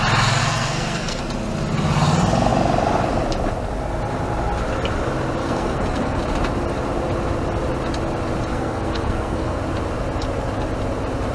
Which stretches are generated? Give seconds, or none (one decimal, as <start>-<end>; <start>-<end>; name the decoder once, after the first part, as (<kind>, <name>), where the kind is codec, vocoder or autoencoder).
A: 0.4-1.2 (codec, SNAC); 5.4-6.2; 8.5-9.6

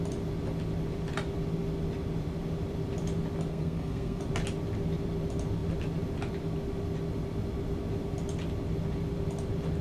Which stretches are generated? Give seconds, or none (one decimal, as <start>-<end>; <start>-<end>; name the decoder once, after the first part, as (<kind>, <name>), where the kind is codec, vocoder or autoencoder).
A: 3.5-4.2 (codec, SNAC)

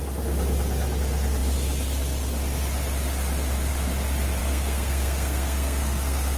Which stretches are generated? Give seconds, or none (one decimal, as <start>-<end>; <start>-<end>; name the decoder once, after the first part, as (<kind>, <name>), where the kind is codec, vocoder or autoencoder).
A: 4.4-6.4 (codec, SNAC)

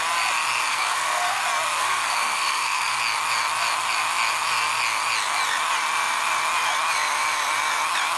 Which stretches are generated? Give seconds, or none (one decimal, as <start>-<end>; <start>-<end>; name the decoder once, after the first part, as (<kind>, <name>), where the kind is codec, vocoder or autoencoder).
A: 0.7-1.4 (codec, SNAC); 1.8-3.0

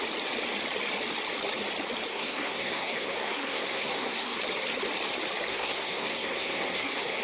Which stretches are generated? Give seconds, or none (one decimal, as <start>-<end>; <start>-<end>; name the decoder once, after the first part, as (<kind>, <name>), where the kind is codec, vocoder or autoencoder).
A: 2.1-4.4 (codec, SNAC); 5.5-7.2

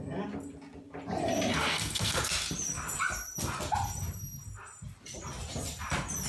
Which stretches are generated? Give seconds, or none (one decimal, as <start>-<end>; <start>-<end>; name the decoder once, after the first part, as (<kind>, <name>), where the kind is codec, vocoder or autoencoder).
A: 1.5-2.3 (codec, SNAC)

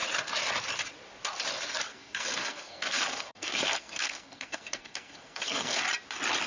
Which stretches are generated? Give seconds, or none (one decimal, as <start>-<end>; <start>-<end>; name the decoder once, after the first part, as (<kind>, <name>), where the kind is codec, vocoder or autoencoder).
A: 1.9-5.8 (codec, SNAC)